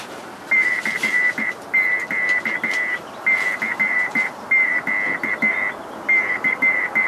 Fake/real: real